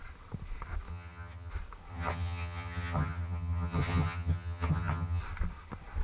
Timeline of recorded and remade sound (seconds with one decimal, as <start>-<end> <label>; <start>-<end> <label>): 0.0-0.9 recorded; 0.9-1.5 remade; 1.5-1.9 recorded; 1.9-5.2 remade; 5.2-6.0 recorded